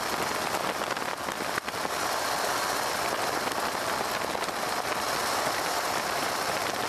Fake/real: real